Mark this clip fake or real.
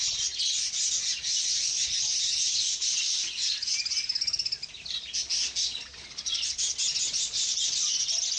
real